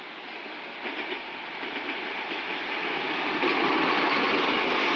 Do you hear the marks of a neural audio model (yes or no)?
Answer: no